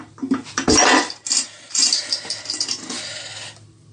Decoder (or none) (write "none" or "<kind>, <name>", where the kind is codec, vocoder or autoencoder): none